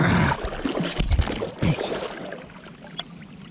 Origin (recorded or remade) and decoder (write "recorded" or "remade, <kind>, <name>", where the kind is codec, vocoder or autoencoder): recorded